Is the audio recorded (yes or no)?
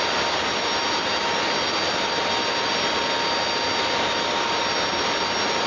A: yes